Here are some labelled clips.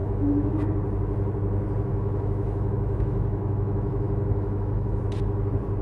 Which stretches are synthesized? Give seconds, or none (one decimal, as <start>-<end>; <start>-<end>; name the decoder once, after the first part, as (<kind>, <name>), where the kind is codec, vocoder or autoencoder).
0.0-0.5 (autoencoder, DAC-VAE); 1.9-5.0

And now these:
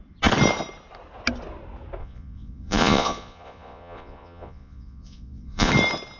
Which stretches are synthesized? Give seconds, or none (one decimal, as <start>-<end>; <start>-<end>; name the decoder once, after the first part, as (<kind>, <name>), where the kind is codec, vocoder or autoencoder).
2.0-5.7 (vocoder, Vocos)

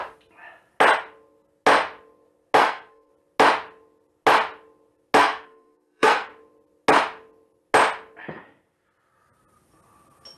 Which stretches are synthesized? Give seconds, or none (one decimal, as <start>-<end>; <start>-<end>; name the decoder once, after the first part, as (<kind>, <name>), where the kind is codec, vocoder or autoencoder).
2.6-3.1 (codec, SNAC); 5.2-6.3